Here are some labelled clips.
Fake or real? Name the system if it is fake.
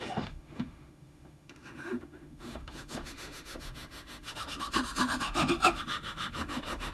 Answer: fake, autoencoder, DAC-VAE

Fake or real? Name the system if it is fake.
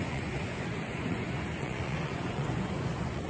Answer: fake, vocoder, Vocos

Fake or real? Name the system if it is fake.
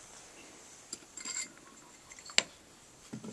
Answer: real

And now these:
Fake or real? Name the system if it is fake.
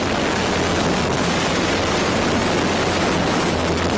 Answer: real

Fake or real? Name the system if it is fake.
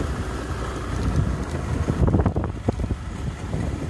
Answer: real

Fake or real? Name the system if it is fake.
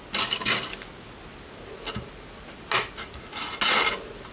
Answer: real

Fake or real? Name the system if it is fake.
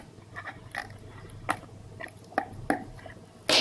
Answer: real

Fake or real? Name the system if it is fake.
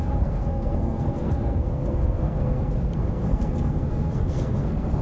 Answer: fake, codec, SNAC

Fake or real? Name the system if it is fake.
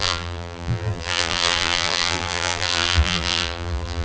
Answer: fake, vocoder, BigVGAN v2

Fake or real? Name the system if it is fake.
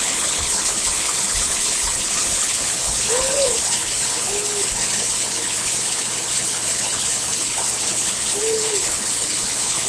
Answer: fake, codec, HILCodec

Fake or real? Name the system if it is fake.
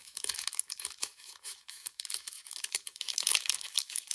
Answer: fake, autoencoder, DAC-VAE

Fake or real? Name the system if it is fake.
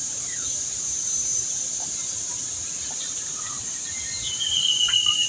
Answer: fake, vocoder, BigVGAN v2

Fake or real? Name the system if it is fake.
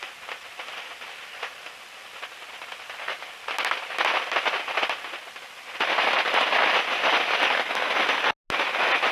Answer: real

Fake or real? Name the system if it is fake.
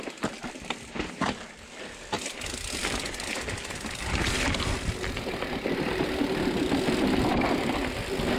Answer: fake, vocoder, BigVGAN v2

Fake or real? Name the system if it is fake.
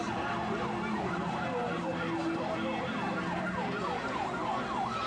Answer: fake, vocoder, BigVGAN v2